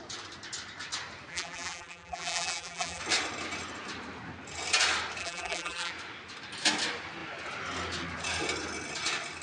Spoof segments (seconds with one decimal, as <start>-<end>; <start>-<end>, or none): 1.3-3.0; 5.2-5.9